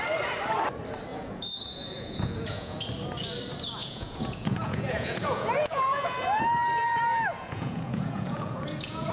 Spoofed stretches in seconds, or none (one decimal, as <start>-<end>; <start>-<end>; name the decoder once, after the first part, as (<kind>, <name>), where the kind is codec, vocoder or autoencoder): 1.1-2.9 (vocoder, Vocos); 3.8-6.4; 7.3-9.1